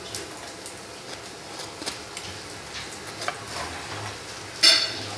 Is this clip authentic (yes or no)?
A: yes